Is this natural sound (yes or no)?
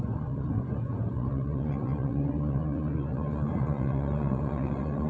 no